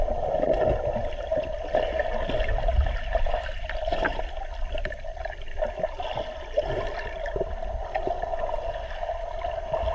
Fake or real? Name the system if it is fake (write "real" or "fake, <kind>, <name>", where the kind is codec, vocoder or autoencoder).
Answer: real